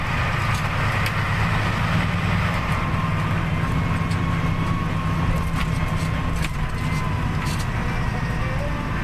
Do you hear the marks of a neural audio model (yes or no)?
no